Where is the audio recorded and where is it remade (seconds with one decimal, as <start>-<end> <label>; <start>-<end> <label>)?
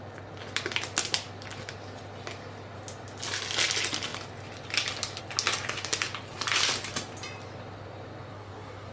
0.0-8.3 recorded; 8.3-8.9 remade